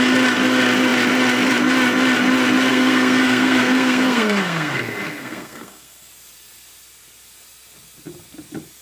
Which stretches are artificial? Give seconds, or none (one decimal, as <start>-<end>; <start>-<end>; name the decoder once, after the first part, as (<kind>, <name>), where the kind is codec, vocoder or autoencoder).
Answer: 2.7-6.1 (codec, SNAC)